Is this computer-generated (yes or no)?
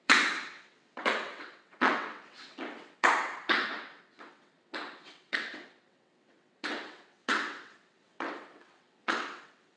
yes